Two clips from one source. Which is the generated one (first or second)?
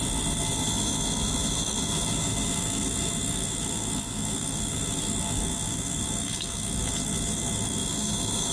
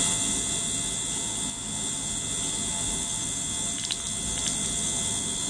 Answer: first